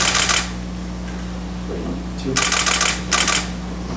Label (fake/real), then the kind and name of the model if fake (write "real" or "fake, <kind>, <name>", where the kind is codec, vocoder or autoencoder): real